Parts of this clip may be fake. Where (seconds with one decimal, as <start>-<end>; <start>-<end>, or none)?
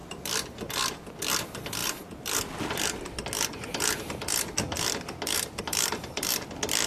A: none